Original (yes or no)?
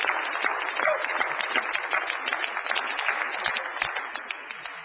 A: yes